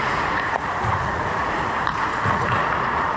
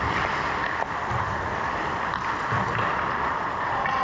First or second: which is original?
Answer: second